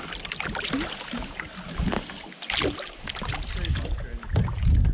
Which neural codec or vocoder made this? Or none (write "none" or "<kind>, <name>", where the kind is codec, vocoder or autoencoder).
none